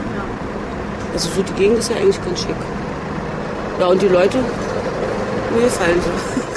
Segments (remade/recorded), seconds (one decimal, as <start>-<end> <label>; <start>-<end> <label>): 0.0-6.6 recorded